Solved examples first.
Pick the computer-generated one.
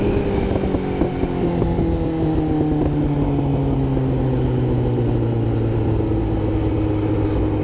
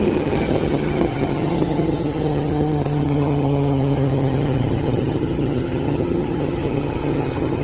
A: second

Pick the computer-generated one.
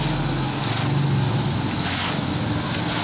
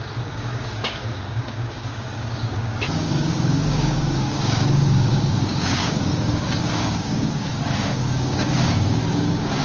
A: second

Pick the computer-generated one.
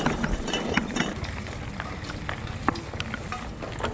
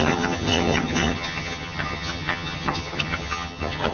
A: second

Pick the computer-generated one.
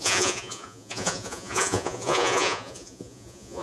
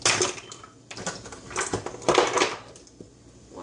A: first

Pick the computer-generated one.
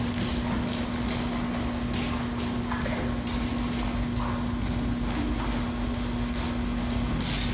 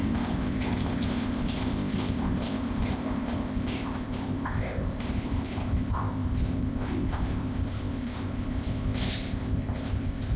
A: second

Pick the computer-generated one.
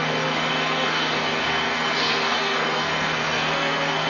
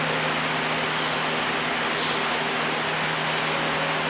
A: first